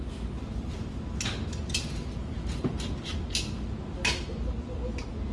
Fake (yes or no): no